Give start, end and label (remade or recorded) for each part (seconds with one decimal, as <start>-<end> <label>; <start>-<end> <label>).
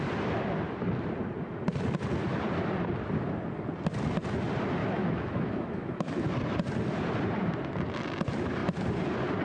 0.0-4.8 recorded; 4.8-6.3 remade; 6.3-9.4 recorded